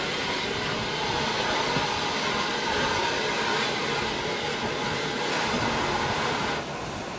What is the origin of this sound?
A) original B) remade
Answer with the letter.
B